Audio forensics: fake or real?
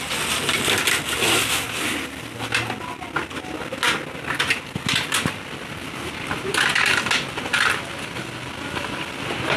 real